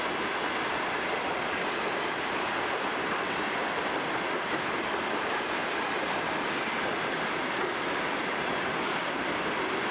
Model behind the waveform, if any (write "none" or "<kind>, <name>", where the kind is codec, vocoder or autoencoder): none